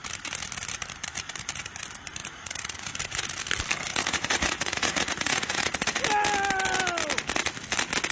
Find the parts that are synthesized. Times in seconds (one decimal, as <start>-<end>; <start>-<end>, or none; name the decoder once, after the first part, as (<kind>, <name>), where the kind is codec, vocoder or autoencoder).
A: 2.2-2.9 (vocoder, Vocos); 3.9-6.0